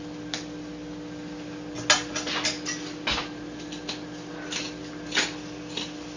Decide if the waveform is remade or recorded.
recorded